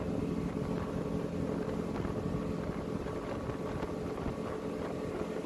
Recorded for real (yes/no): yes